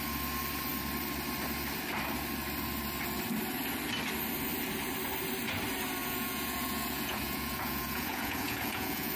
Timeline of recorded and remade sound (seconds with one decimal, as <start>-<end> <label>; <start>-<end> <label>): 0.0-6.0 recorded; 6.0-9.2 remade